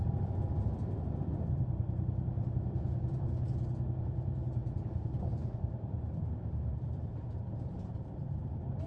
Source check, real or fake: fake